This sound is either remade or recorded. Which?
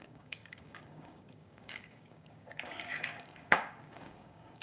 remade